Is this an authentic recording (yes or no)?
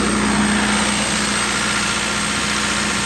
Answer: yes